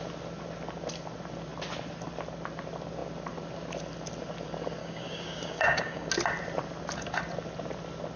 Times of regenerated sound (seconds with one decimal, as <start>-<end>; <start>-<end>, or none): 4.8-6.1